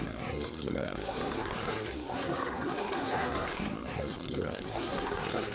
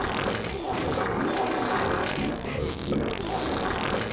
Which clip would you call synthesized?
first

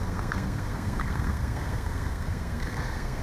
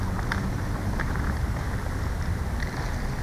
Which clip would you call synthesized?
first